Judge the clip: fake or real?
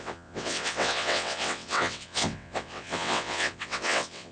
fake